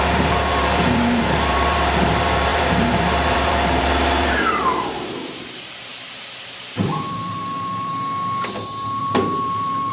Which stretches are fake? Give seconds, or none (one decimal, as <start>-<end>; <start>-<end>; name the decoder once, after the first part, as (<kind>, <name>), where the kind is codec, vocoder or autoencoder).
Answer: 0.0-7.9 (vocoder, BigVGAN v2); 9.0-9.9